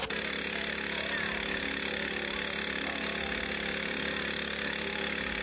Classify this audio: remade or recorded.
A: recorded